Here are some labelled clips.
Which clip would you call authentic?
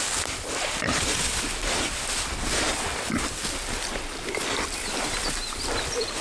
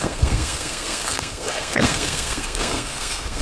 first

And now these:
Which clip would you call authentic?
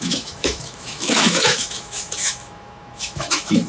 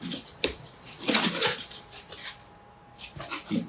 second